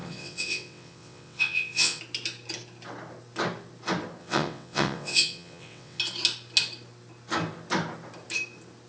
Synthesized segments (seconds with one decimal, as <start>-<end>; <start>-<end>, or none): 0.0-2.0; 4.2-6.0